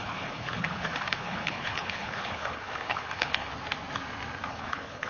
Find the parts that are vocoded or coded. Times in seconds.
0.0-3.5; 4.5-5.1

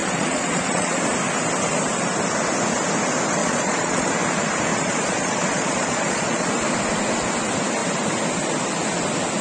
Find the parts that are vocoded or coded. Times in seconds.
0.0-1.0; 3.4-4.1; 4.7-6.5

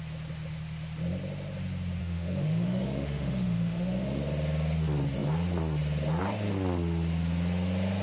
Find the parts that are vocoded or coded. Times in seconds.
2.0-4.2

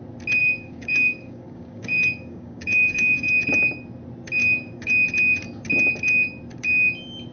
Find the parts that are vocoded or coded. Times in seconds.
0.4-3.3; 4.4-4.9

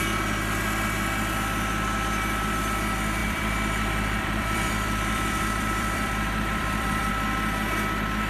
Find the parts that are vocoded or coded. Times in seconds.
3.2-7.1

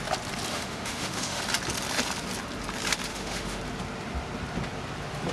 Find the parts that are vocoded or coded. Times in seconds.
0.5-1.4; 3.1-3.6